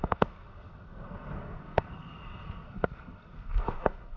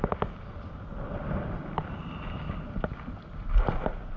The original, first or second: second